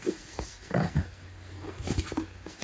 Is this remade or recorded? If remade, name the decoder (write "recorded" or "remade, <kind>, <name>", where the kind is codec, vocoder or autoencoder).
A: remade, codec, SNAC